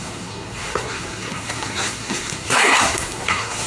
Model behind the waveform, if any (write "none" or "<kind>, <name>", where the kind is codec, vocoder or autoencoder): codec, SNAC